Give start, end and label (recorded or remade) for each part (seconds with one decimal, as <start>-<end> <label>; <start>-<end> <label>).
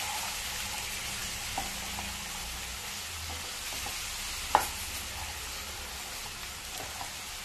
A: 0.0-7.4 recorded